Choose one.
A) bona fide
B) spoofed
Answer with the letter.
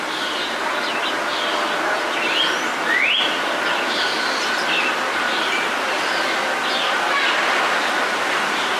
A